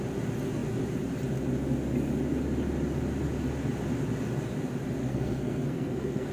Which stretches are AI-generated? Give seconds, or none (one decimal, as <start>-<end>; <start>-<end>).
5.0-6.3